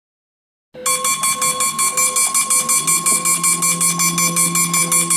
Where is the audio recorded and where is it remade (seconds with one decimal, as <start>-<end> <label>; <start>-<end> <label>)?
0.0-5.2 recorded